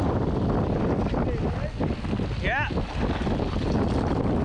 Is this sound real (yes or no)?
yes